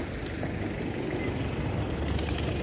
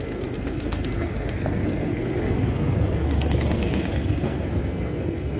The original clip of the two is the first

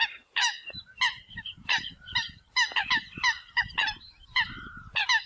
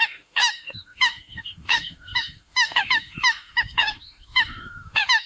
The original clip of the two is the first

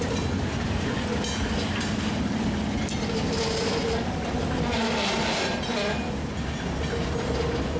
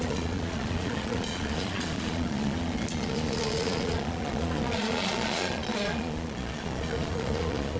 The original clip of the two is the first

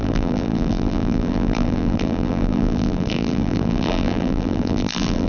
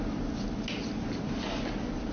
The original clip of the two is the second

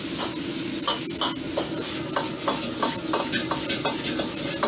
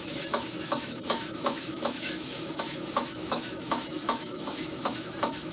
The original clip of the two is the first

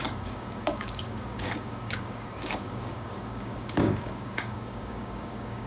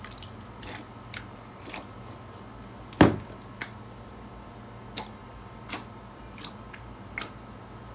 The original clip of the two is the second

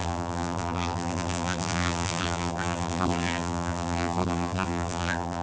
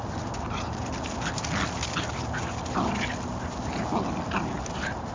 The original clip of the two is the second